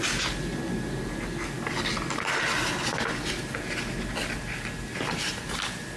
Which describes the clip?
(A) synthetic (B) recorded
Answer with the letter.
B